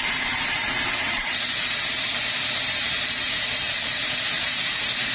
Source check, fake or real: fake